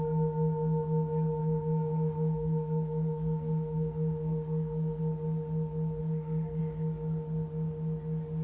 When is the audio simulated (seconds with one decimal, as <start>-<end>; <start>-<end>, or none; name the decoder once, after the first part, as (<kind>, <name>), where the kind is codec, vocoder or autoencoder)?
1.4-5.0 (codec, SNAC); 6.0-6.6